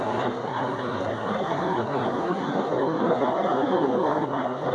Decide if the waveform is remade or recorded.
remade